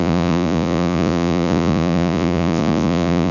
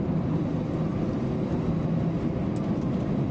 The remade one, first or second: first